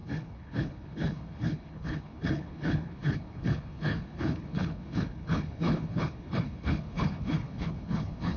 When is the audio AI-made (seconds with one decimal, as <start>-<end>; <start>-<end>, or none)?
0.0-8.4